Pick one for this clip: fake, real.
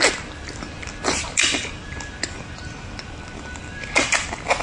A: real